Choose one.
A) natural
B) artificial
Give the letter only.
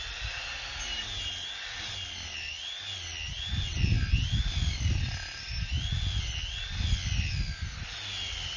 A